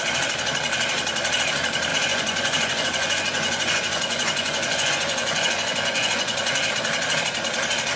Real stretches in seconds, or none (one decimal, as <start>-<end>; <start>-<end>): 0.0-1.9; 6.7-8.0